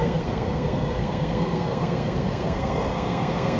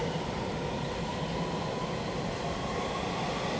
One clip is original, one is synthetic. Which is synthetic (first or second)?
first